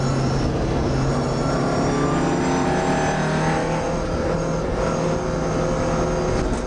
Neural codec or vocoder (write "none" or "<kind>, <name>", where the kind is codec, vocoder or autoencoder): none